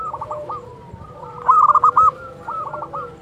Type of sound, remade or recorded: recorded